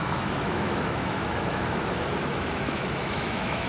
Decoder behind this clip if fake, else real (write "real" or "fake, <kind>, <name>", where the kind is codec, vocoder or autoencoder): fake, autoencoder, DAC-VAE